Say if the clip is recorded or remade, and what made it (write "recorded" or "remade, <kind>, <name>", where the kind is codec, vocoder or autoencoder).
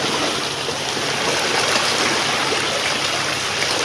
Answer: recorded